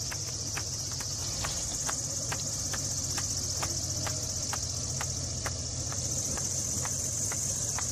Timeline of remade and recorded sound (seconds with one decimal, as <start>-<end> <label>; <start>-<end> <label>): 0.0-1.2 remade; 1.2-5.9 recorded; 5.9-7.9 remade